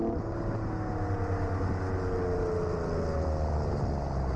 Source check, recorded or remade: recorded